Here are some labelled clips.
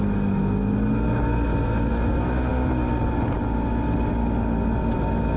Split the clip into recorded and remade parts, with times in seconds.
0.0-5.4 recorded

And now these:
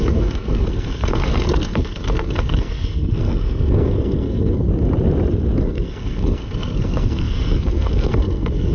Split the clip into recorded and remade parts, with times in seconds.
0.0-4.7 remade; 4.7-5.6 recorded; 5.6-8.7 remade

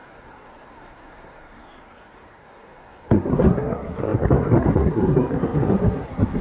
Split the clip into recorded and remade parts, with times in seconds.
0.0-6.4 remade

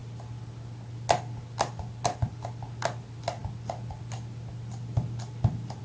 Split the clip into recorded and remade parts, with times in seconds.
0.0-5.8 recorded